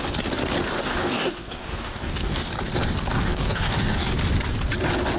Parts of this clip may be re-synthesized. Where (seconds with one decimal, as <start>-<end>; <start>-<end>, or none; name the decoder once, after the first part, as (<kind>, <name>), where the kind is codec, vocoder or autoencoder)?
1.0-2.5 (codec, DAC); 3.1-4.1